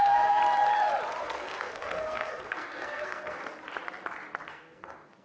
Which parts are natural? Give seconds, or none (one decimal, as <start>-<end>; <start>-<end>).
0.4-1.2; 3.4-4.5